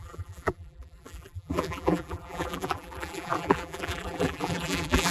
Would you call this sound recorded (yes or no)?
no